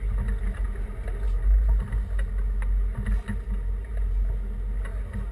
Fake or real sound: real